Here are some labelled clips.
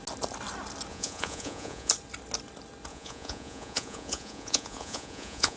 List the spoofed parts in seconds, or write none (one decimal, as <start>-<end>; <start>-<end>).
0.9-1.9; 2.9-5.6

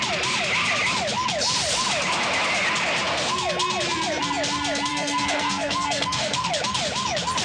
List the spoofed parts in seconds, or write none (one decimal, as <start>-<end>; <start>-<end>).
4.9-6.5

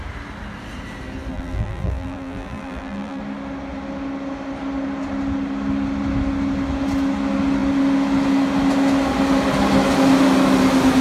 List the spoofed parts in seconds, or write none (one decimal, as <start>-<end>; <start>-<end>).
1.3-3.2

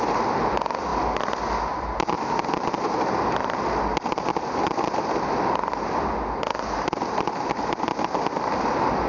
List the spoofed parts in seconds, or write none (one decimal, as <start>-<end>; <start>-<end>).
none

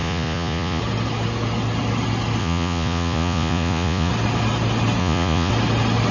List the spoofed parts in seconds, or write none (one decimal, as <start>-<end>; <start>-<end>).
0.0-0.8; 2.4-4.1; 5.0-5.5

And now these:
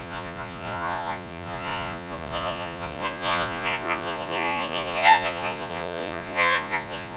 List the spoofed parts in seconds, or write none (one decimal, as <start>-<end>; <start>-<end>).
0.0-7.2

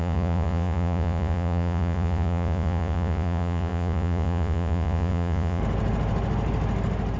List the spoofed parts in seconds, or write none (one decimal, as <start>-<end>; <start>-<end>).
0.0-5.6

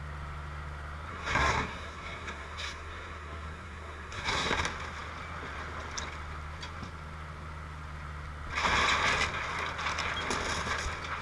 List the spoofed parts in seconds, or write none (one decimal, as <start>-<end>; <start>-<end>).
1.1-4.5